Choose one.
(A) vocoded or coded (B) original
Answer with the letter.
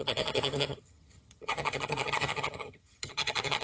A